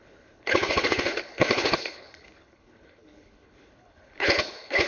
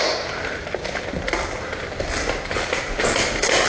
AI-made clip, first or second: first